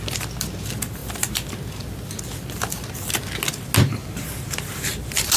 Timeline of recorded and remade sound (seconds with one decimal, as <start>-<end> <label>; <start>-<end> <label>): 0.0-4.0 recorded; 4.0-5.4 remade